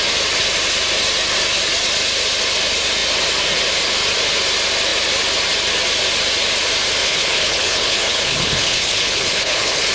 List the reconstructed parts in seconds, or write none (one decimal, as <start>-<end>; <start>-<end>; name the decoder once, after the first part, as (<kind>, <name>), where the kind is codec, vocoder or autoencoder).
7.0-9.9 (codec, HILCodec)